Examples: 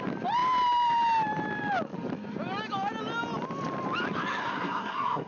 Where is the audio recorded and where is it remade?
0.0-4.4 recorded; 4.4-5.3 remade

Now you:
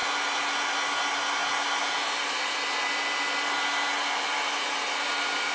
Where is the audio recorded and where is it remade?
0.0-5.5 recorded